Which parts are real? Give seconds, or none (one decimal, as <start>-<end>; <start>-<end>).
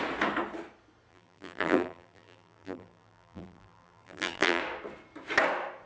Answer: 0.0-1.1; 4.6-5.9